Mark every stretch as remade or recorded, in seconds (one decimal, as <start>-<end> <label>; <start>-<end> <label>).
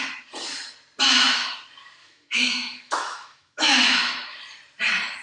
0.0-2.0 recorded; 2.0-4.4 remade; 4.4-5.2 recorded